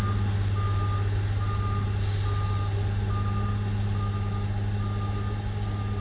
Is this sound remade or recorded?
recorded